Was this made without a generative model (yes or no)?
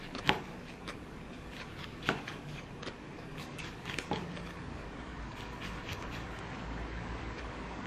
no